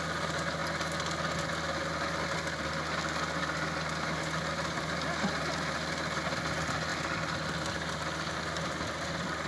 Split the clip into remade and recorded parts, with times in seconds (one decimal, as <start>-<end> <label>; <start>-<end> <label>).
0.0-9.5 recorded